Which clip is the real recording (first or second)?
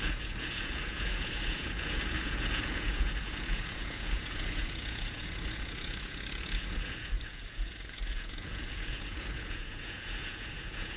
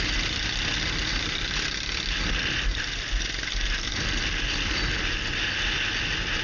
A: second